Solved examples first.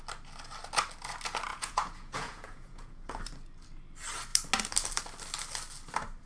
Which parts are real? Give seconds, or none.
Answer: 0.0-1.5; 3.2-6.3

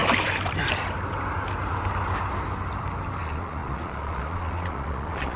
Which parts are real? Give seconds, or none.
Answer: 0.0-3.2

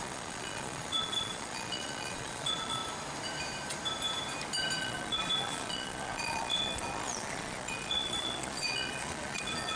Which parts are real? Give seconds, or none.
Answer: 2.8-4.8

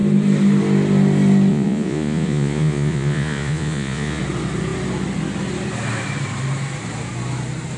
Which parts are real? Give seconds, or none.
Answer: 0.0-1.5; 4.2-7.8

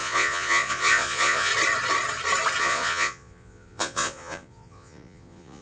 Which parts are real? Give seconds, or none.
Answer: 1.5-2.6

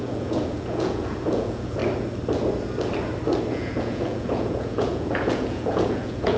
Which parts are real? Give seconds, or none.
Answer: 1.8-3.5

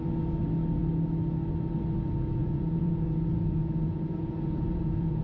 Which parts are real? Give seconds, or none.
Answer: 0.0-2.4

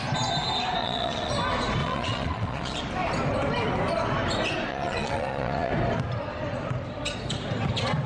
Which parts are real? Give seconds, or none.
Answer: 0.0-0.8; 1.3-1.8; 2.8-4.7; 5.7-8.1